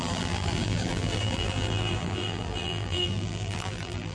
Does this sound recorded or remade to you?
remade